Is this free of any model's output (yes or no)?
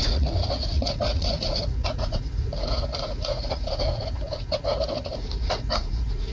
no